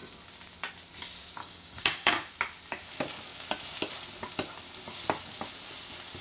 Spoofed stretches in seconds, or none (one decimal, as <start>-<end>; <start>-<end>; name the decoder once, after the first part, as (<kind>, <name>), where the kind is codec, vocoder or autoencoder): 1.4-2.3 (codec, DAC)